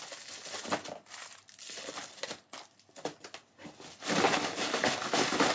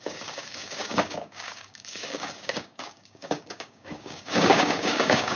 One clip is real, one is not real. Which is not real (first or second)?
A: second